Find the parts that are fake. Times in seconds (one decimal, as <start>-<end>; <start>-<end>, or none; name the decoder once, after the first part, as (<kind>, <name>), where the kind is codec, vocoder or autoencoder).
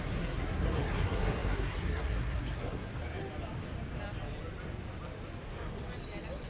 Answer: 0.0-2.9 (codec, SNAC)